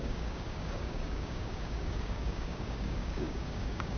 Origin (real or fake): fake